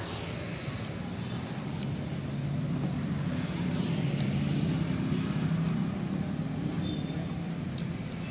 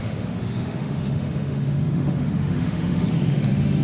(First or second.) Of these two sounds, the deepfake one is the second